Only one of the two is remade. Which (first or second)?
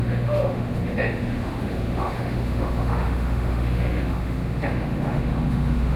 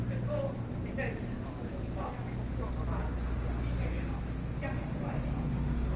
first